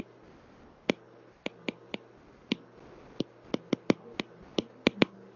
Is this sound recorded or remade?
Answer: recorded